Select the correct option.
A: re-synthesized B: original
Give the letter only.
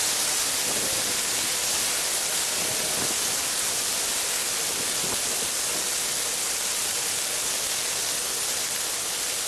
B